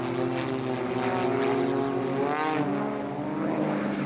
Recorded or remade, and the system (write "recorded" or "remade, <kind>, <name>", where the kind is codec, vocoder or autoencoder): recorded